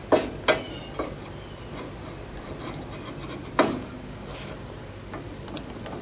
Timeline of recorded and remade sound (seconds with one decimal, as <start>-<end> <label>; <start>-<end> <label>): 0.0-6.0 recorded